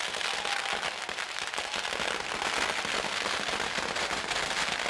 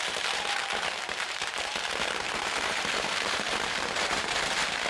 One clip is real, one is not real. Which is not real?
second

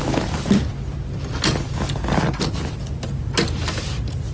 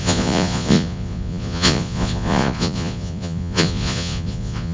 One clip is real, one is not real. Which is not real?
second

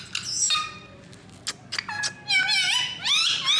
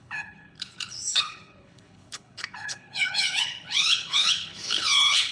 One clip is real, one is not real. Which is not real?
second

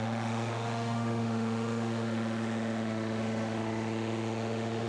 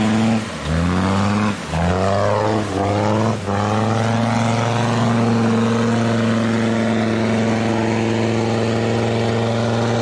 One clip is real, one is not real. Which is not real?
first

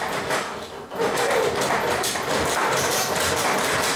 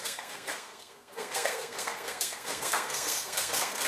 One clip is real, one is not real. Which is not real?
second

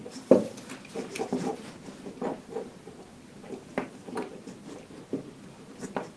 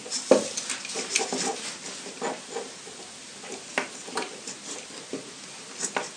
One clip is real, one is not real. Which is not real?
first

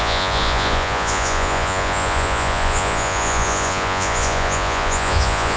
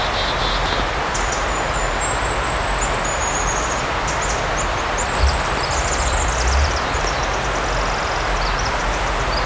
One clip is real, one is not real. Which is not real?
first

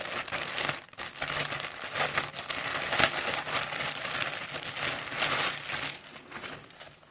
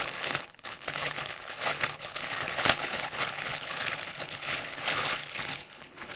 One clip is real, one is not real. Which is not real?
second